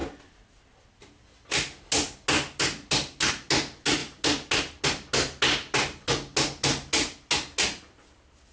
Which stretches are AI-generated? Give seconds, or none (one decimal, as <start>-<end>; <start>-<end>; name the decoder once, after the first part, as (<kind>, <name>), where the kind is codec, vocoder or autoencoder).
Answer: none